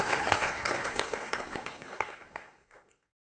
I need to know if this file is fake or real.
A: fake